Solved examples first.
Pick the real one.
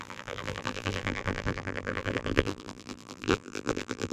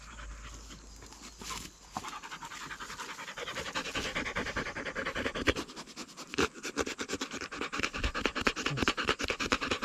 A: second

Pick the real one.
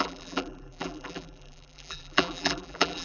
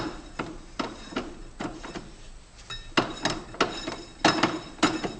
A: second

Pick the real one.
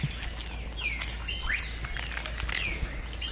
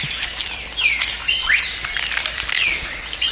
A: first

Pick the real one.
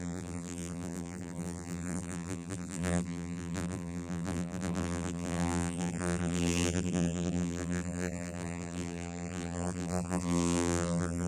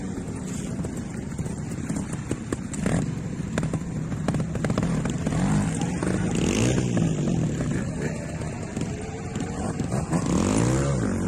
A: second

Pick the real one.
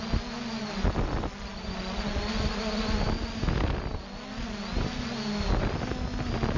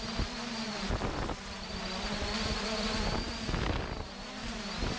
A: first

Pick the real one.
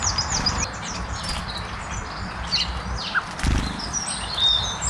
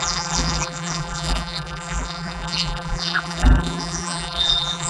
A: first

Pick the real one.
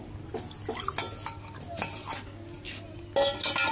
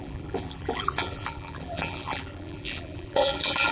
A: first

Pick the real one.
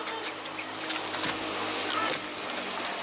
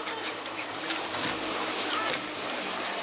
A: first